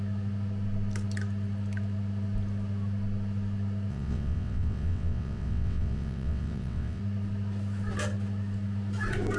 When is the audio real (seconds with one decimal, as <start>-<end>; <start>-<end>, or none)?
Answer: 0.0-3.9; 7.0-9.4

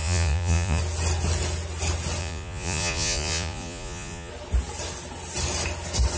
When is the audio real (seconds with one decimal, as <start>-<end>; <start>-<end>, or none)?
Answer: 0.8-2.2; 4.3-6.2

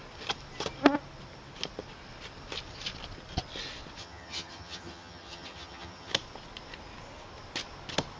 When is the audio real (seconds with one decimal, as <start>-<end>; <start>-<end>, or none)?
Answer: 0.0-4.0; 6.1-8.2

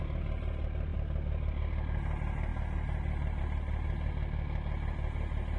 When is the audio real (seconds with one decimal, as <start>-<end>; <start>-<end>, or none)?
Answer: 0.0-5.6

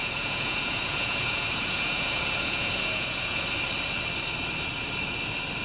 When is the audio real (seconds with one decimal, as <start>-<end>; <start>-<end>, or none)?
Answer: 3.4-5.6

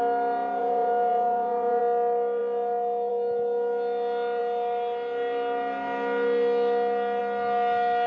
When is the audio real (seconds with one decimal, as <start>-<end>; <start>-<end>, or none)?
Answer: 0.0-0.6; 1.8-8.1

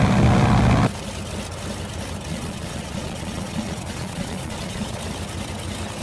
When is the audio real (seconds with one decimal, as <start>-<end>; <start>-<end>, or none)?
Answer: 0.0-2.3; 5.0-6.0

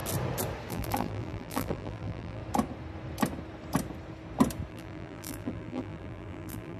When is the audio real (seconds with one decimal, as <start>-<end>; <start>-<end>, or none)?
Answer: 0.0-0.7; 2.4-4.7